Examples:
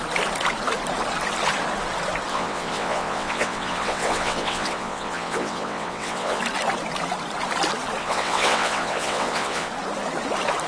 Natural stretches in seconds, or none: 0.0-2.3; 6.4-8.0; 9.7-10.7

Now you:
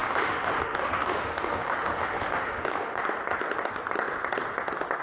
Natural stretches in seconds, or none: 3.0-5.0

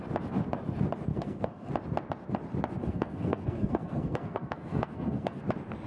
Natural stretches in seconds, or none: 0.0-1.1; 1.7-2.8; 5.4-5.9

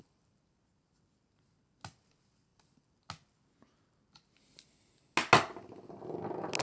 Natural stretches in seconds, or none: 0.0-6.6

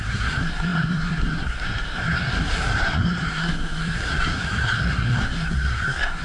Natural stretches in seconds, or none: none

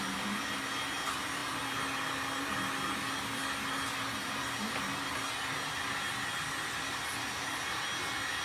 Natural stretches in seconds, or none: 0.0-8.4

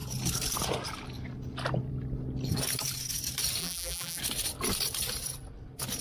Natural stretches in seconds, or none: 0.0-3.6; 4.2-6.0

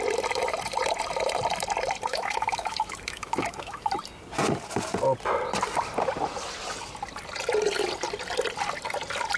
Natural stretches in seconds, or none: 0.0-2.1; 3.9-9.4